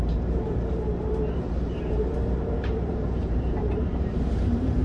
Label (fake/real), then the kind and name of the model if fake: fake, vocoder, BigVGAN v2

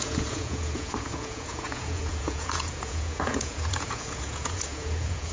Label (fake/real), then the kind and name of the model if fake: fake, vocoder, Vocos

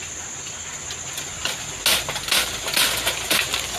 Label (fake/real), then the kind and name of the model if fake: real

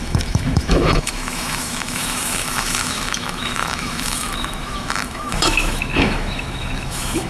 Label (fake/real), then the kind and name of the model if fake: fake, autoencoder, DAC-VAE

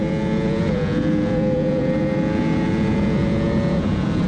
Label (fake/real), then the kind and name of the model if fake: fake, vocoder, Vocos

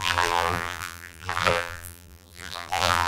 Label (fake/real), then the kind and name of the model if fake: fake, vocoder, BigVGAN v2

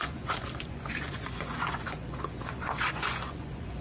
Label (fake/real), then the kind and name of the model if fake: fake, vocoder, Vocos